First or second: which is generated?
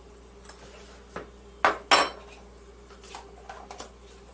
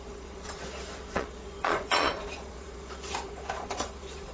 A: second